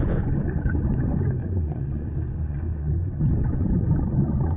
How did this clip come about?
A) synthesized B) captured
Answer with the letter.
A